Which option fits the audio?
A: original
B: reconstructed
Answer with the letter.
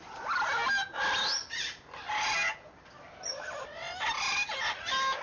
A